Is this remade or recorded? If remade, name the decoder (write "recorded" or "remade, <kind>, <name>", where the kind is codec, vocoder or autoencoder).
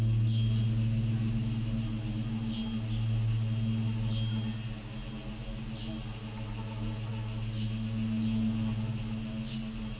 recorded